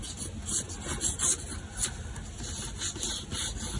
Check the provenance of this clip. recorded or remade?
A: recorded